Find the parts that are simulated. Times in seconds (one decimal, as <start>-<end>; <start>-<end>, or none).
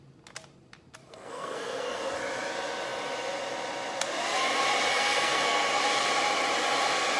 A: 1.0-2.0; 4.9-5.8